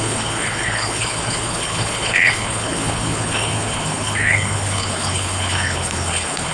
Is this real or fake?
fake